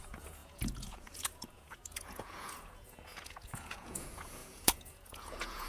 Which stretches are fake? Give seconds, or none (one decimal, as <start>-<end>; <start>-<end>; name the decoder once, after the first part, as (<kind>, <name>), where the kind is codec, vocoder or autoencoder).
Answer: 0.0-5.7 (vocoder, Vocos)